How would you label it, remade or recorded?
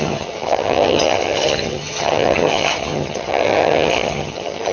remade